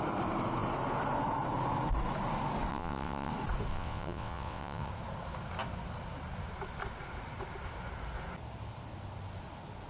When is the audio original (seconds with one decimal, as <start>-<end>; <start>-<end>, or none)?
0.0-2.7; 3.3-3.7; 4.9-9.9

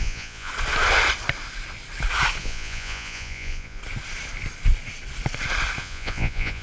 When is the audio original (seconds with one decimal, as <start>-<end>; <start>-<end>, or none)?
0.5-2.4; 3.8-5.8

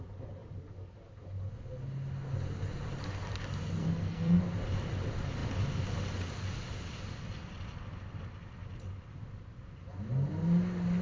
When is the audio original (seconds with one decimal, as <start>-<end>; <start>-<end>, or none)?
0.0-3.8; 4.4-11.0

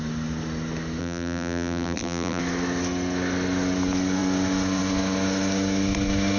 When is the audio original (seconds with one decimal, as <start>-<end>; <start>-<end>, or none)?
0.0-1.0; 2.4-6.4